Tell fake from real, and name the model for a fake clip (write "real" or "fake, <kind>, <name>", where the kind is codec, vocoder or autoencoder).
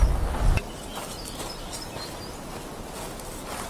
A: real